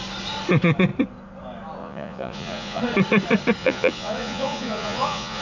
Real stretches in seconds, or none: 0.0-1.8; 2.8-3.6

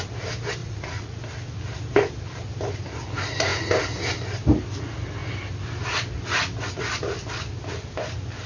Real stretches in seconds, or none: 0.0-0.6; 1.2-8.5